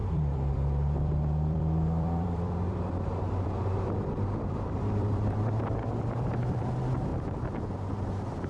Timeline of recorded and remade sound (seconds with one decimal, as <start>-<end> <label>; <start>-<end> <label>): 0.0-7.1 remade; 7.1-7.9 recorded; 7.9-8.5 remade